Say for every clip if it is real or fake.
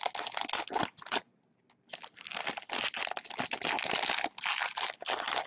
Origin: real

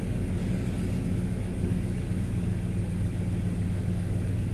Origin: fake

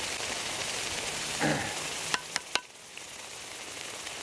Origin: real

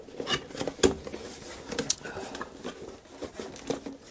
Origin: real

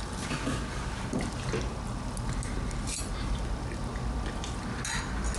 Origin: real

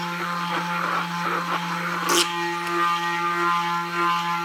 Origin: real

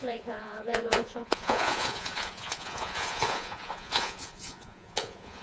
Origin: fake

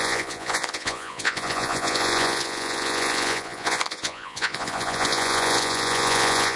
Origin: fake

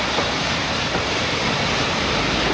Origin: real